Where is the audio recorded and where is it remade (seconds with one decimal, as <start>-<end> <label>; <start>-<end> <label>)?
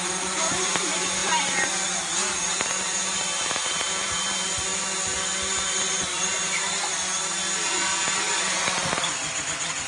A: 0.0-7.4 remade; 7.4-9.9 recorded